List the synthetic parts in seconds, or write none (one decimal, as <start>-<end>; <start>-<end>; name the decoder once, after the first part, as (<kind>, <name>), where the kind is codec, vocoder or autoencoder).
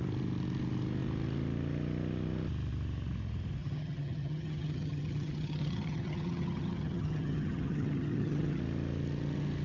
3.6-8.6 (vocoder, HiFi-GAN)